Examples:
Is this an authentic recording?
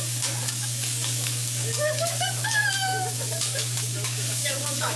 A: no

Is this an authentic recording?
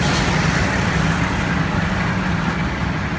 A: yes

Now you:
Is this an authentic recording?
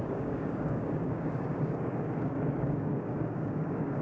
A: no